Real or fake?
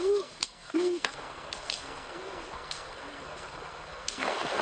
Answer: fake